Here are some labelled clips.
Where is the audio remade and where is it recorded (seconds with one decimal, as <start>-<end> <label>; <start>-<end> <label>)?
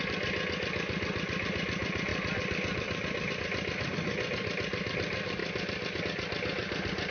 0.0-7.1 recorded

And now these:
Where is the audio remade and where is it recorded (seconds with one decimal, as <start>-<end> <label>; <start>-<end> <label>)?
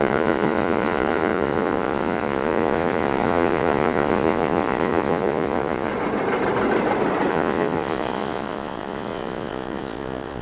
0.0-5.9 remade; 5.9-7.3 recorded; 7.3-10.4 remade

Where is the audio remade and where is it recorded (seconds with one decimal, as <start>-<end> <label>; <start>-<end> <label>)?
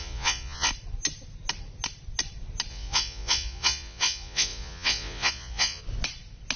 0.0-0.7 remade; 0.7-2.7 recorded; 2.7-5.8 remade; 5.8-6.6 recorded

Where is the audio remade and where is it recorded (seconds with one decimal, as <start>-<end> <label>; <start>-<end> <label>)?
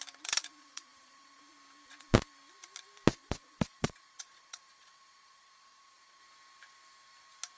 0.0-0.6 recorded; 0.6-1.4 remade; 1.4-3.1 recorded; 3.1-6.2 remade; 6.2-7.6 recorded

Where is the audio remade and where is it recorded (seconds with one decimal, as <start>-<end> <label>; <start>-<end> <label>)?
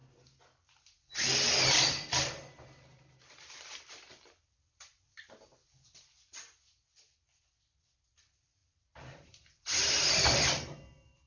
0.0-1.9 recorded; 1.9-11.3 remade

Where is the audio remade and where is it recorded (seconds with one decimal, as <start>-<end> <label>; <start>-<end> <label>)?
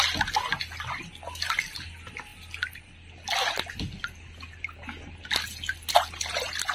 0.0-6.7 recorded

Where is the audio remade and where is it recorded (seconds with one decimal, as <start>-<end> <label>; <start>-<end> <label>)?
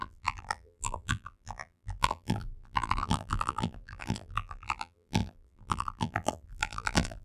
0.0-7.2 remade